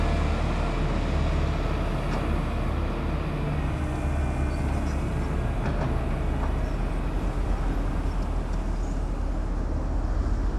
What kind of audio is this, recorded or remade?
recorded